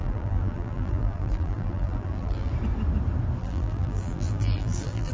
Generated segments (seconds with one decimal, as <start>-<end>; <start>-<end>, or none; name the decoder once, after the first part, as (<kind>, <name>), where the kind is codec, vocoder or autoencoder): 0.0-2.5 (vocoder, BigVGAN v2); 3.4-5.1